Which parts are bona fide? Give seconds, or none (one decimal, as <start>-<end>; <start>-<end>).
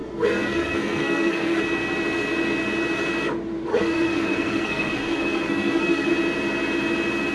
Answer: 1.6-3.7; 6.1-7.3